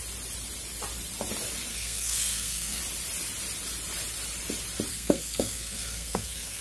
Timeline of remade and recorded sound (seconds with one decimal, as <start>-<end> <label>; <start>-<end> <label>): 0.0-1.7 recorded; 1.7-2.8 remade; 2.8-4.9 recorded; 4.9-6.6 remade